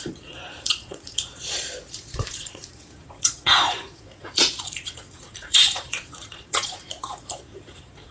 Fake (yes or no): yes